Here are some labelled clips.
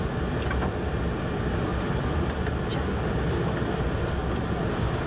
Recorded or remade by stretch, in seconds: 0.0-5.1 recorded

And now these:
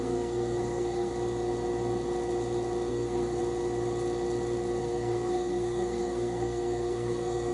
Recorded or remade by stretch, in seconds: 0.0-1.1 remade; 1.1-2.9 recorded; 2.9-3.4 remade; 3.4-4.8 recorded; 4.8-7.5 remade